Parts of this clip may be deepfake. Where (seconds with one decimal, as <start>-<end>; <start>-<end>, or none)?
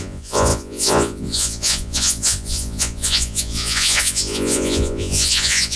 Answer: 0.0-5.8